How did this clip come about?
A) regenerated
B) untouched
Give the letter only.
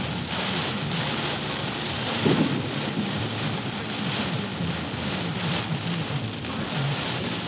B